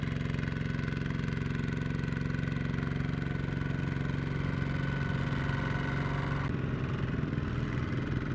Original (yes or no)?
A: yes